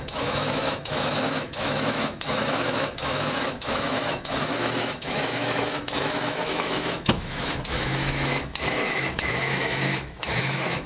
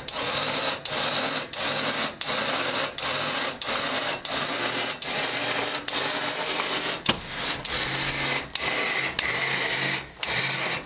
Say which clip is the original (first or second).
second